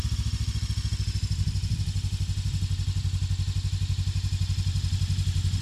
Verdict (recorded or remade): recorded